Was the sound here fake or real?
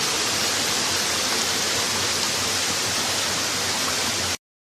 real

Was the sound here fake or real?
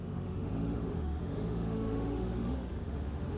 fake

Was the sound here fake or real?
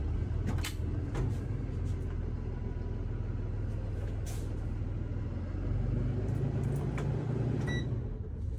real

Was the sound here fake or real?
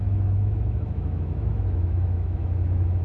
fake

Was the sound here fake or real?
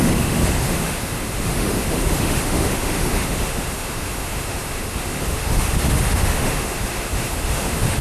fake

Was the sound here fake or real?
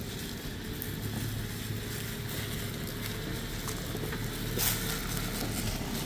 real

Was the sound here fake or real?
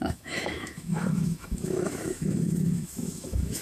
fake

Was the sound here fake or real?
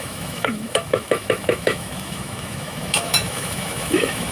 fake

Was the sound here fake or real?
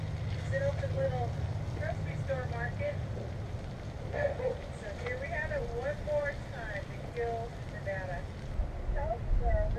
real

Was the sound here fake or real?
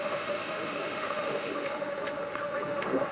fake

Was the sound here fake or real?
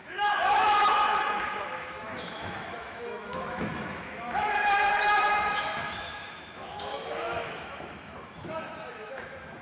fake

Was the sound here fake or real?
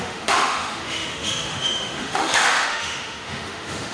fake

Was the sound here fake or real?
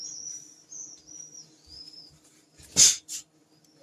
real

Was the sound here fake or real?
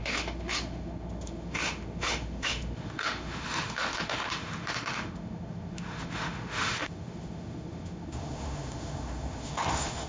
fake